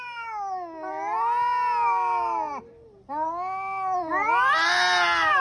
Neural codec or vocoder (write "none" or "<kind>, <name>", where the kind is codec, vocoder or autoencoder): none